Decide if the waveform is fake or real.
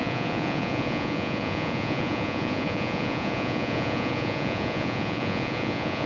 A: fake